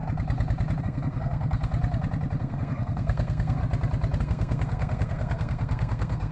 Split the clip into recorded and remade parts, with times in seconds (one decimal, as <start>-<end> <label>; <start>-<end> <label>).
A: 0.0-0.8 recorded; 0.8-1.7 remade; 1.7-2.4 recorded; 2.4-3.6 remade; 3.6-4.2 recorded; 4.2-6.3 remade